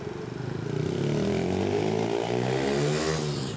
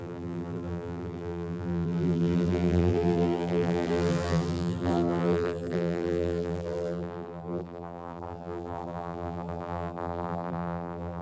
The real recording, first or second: first